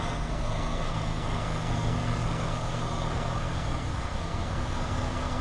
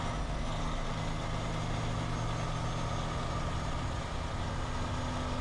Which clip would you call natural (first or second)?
second